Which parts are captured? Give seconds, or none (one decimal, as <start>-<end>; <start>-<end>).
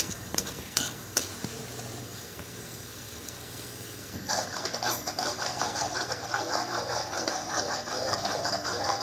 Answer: 1.3-2.0